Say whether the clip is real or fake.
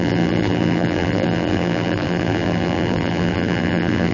fake